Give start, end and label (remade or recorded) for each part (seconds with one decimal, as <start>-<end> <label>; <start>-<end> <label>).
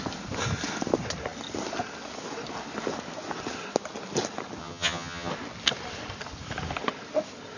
0.0-4.6 recorded; 4.6-5.3 remade; 5.3-7.6 recorded